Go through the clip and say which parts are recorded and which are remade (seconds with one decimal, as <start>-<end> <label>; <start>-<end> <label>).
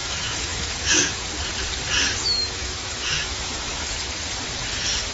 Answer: 0.0-1.2 remade; 1.2-2.2 recorded; 2.2-3.9 remade; 3.9-5.1 recorded